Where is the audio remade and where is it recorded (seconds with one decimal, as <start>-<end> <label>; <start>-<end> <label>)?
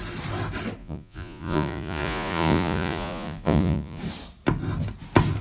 0.0-0.8 recorded; 0.8-4.0 remade; 4.0-5.4 recorded